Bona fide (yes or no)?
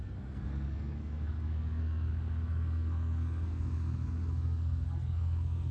no